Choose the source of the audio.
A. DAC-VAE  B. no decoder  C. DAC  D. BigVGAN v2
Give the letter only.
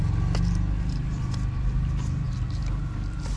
B